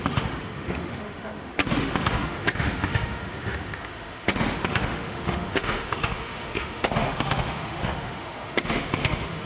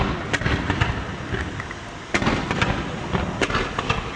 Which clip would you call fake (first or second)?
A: first